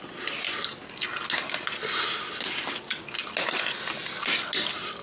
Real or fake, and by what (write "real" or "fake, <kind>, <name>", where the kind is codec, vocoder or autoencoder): real